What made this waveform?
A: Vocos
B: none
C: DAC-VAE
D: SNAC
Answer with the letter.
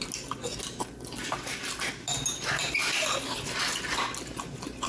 B